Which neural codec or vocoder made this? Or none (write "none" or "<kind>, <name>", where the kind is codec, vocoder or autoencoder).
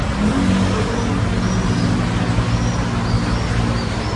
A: none